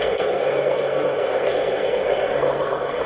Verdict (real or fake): fake